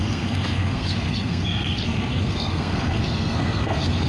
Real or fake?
fake